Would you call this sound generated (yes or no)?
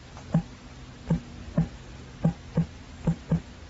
no